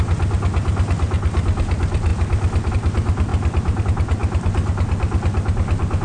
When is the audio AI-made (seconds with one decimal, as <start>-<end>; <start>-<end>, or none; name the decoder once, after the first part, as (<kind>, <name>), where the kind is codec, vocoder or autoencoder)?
none